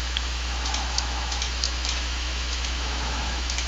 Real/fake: fake